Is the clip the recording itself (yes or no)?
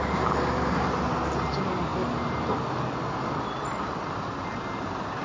yes